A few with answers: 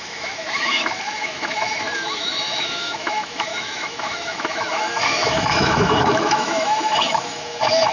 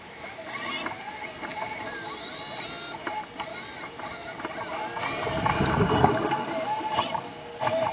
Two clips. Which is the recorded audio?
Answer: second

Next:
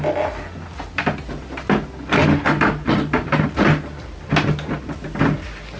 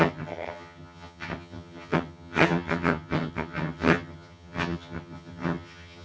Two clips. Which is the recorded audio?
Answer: first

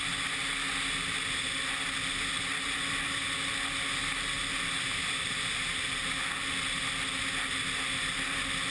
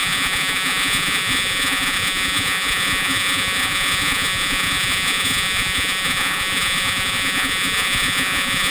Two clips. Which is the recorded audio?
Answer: first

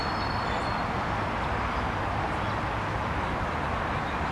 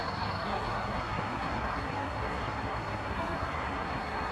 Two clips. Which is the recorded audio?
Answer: first